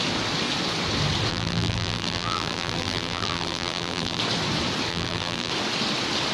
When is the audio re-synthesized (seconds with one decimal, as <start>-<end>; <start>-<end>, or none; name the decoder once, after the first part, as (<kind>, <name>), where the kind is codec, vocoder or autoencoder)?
1.3-4.2 (vocoder, BigVGAN v2); 4.9-5.5